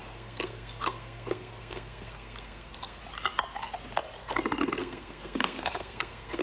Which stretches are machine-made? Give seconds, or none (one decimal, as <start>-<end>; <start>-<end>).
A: 0.0-3.0; 4.2-6.4